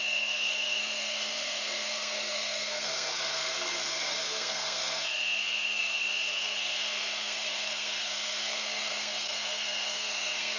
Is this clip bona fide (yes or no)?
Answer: no